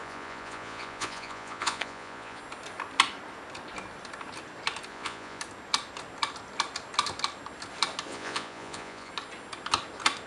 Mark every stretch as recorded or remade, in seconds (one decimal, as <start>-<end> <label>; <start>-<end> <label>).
0.0-2.4 remade; 2.4-4.9 recorded; 4.9-5.4 remade; 5.4-8.1 recorded; 8.1-9.1 remade; 9.1-10.3 recorded